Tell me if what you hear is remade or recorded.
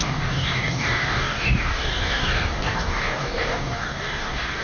remade